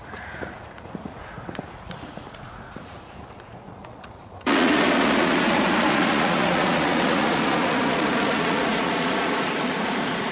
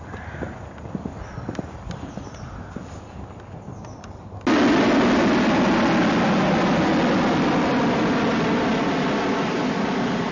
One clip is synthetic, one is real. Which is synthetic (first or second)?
first